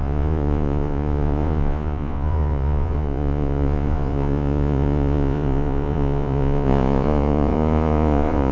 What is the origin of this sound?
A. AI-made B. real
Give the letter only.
A